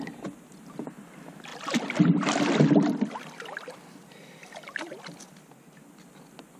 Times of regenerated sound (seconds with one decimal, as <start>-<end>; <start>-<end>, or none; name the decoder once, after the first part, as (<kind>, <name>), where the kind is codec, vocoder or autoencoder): 1.5-5.3 (vocoder, BigVGAN v2)